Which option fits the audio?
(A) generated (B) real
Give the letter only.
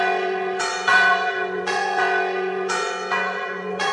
A